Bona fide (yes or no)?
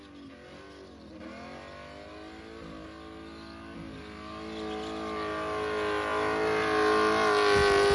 yes